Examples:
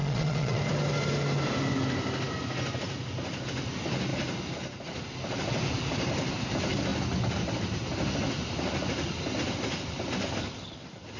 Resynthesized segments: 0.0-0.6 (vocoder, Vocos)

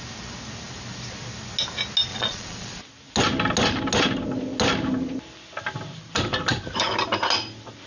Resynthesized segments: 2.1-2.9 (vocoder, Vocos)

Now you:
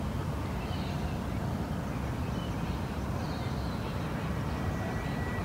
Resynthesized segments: none

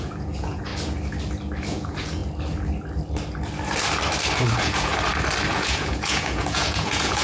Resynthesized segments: 0.0-0.7 (vocoder, Vocos); 1.7-2.2; 4.5-4.9; 5.5-7.2

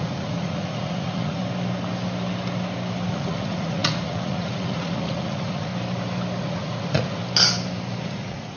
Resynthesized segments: 0.0-1.4 (vocoder, Vocos); 3.1-5.7; 6.4-7.2; 8.0-8.6